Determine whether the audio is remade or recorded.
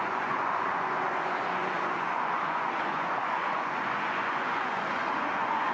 remade